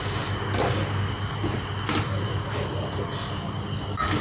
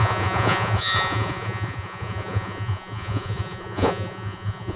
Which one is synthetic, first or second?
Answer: second